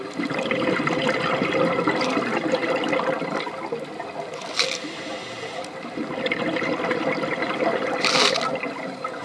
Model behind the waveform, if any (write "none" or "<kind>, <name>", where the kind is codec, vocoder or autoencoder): none